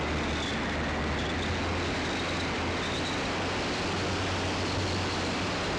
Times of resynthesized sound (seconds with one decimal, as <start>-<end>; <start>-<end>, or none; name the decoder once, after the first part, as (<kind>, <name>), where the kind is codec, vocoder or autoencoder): none